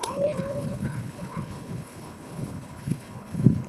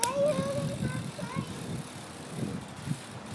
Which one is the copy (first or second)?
first